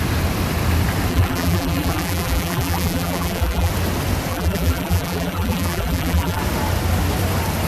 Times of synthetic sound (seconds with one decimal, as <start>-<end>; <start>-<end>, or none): 1.1-3.7; 4.3-6.4